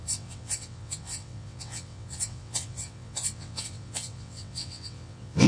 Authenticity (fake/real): fake